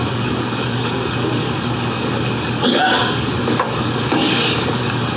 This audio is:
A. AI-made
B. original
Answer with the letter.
A